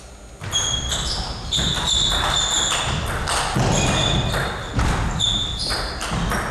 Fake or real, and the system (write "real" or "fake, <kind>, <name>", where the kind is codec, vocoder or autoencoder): real